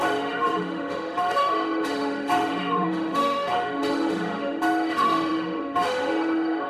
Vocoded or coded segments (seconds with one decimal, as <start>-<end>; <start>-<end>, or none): 0.0-6.7